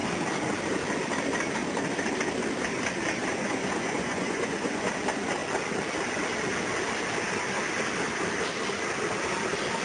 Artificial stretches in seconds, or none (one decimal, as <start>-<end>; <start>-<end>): 3.2-4.9